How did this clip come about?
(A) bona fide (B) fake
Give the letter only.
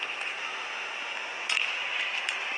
A